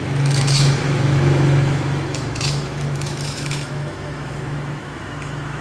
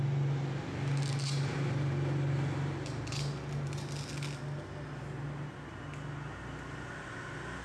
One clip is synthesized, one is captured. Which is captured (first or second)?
second